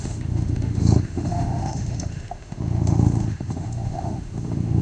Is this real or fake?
fake